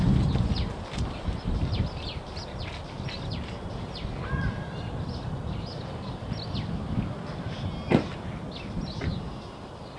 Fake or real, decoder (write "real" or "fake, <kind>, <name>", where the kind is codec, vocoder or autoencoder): real